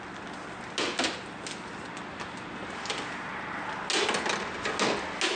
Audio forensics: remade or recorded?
recorded